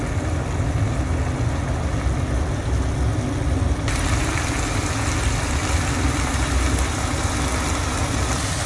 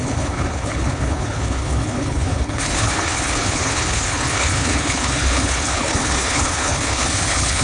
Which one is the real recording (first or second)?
first